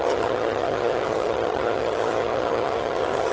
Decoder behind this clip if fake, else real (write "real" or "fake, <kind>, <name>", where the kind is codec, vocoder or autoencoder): fake, vocoder, HiFi-GAN